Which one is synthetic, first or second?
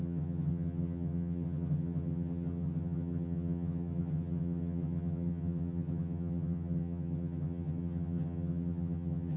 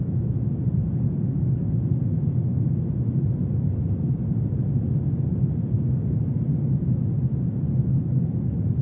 first